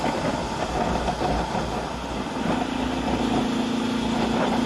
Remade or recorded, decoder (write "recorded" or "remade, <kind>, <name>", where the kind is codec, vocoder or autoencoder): recorded